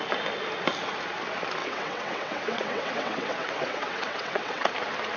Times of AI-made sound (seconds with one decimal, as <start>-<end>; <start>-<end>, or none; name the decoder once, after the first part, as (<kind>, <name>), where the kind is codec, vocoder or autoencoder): 1.6-4.7 (vocoder, WaveNeXt)